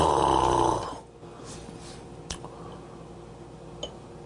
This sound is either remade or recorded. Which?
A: recorded